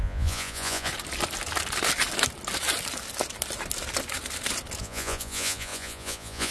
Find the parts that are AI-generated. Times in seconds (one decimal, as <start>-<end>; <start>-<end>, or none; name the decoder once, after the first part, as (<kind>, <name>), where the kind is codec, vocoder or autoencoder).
0.0-0.9 (vocoder, Vocos); 4.8-6.5